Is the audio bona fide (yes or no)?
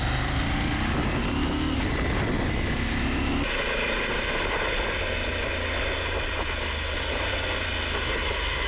yes